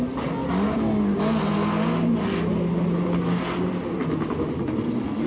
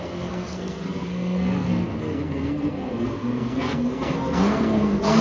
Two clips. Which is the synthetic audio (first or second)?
second